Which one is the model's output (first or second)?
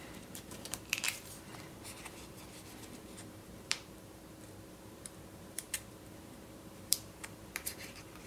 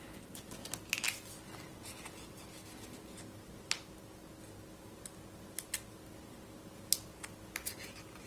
first